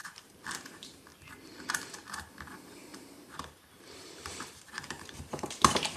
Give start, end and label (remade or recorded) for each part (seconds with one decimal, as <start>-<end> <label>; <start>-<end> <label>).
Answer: 0.0-1.1 remade; 1.1-2.3 recorded; 2.3-6.0 remade